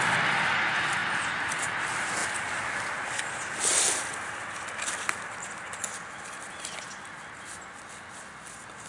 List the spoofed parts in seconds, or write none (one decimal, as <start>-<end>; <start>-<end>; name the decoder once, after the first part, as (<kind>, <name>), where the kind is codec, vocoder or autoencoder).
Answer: none